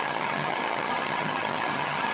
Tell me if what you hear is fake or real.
fake